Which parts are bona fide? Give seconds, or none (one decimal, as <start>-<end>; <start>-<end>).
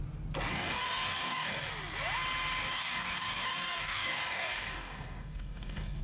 0.0-0.5; 1.7-2.6